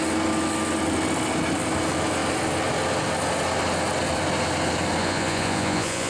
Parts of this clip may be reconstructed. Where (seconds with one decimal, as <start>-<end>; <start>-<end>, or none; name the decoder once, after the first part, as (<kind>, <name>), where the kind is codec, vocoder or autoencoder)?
5.0-6.1 (vocoder, Vocos)